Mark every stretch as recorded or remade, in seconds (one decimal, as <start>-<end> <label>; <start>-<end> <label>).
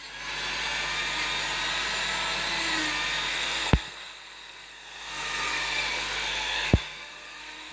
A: 0.0-3.3 recorded; 3.3-7.7 remade